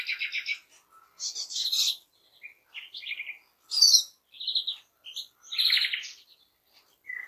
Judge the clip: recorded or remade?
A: recorded